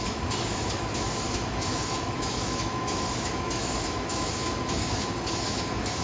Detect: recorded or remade remade